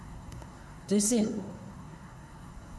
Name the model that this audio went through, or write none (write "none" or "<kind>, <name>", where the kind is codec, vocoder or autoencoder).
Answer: codec, SNAC